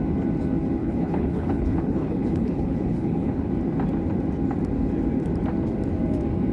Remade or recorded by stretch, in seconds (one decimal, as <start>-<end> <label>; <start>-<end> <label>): 0.0-0.8 recorded; 0.8-3.5 remade; 3.5-6.5 recorded